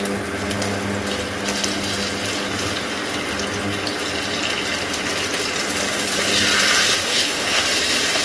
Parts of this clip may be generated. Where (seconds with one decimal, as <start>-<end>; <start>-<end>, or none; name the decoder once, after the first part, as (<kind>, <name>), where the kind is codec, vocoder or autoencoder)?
7.0-7.6 (codec, HILCodec)